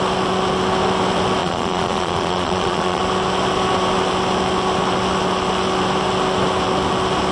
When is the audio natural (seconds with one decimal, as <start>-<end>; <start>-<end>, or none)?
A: 0.0-1.4; 3.0-7.3